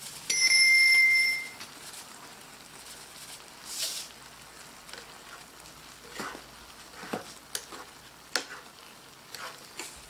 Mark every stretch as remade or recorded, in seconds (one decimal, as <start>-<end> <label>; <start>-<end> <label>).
0.0-0.4 recorded; 0.4-2.5 remade; 2.5-10.1 recorded